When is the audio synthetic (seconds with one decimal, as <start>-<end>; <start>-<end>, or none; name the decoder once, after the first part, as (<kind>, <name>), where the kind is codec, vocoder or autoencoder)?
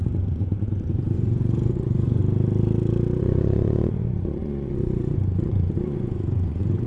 0.0-2.2 (vocoder, Vocos); 3.2-6.9